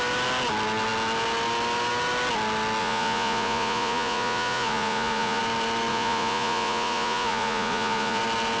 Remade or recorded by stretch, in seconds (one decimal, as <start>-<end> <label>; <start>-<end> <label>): 0.0-2.8 recorded; 2.8-5.4 remade; 5.4-5.9 recorded; 5.9-8.2 remade; 8.2-8.6 recorded